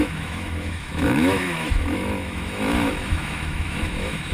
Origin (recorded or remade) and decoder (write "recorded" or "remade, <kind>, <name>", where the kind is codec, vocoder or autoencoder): remade, autoencoder, DAC-VAE